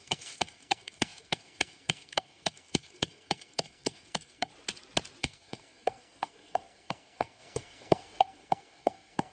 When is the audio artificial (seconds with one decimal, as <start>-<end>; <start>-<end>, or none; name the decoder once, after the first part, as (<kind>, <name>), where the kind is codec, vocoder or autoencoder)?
0.0-4.5 (codec, SNAC); 5.2-9.3